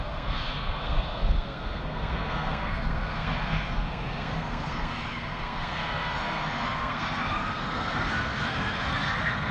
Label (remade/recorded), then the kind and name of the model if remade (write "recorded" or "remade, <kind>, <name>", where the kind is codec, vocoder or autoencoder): remade, codec, SNAC